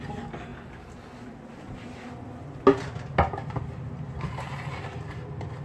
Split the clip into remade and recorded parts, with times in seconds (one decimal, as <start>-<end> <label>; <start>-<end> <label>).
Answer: 0.0-5.6 recorded